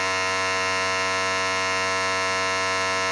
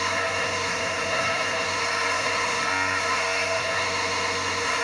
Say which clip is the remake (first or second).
second